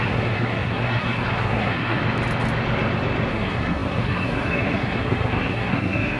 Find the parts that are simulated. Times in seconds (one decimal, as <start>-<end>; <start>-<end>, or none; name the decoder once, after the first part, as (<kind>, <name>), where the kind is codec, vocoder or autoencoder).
0.0-2.0 (codec, SNAC); 3.3-6.2